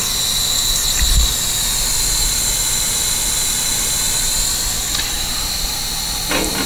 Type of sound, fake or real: real